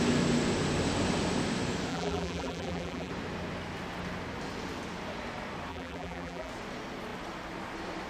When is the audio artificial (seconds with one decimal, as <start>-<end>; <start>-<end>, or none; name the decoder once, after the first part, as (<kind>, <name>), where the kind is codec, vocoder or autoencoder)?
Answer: 1.9-3.1 (vocoder, BigVGAN v2); 5.7-6.5